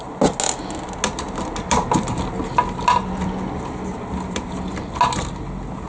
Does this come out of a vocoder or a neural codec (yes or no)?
no